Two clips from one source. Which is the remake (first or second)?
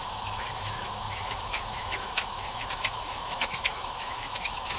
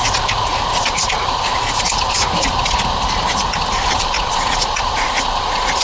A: first